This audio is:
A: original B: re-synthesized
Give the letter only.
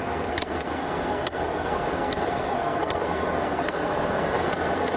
B